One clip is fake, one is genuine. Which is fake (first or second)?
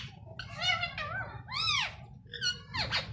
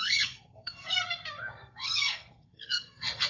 second